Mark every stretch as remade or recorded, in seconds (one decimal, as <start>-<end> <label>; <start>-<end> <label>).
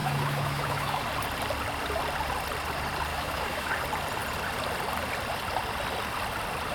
0.0-1.0 remade; 1.0-3.1 recorded; 3.1-3.7 remade; 3.7-6.7 recorded